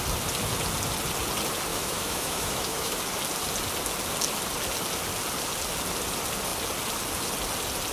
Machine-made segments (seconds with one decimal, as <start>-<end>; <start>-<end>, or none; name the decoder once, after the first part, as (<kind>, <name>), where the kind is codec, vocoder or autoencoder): 1.7-3.0 (autoencoder, DAC-VAE)